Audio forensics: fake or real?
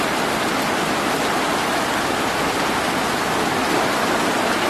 real